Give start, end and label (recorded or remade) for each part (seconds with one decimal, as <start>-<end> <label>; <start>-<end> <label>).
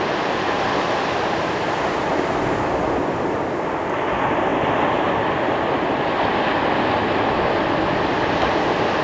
0.0-9.0 recorded